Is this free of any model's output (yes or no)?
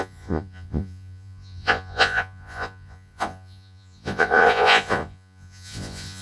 no